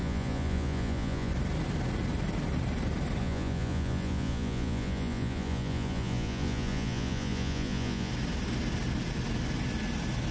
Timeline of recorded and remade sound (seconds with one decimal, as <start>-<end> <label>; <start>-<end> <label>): 0.0-1.3 remade; 1.3-3.2 recorded; 3.2-8.1 remade; 8.1-10.3 recorded